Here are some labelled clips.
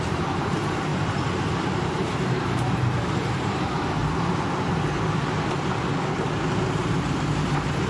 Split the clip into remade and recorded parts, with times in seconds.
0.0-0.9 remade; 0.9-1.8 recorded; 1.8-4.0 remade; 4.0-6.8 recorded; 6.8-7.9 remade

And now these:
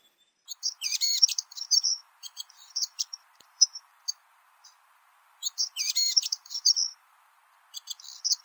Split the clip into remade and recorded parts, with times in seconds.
0.0-7.4 remade; 7.4-8.4 recorded

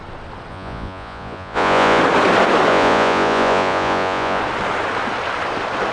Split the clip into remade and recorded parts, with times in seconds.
0.0-0.5 recorded; 0.5-2.0 remade; 2.0-2.7 recorded; 2.7-4.4 remade; 4.4-5.9 recorded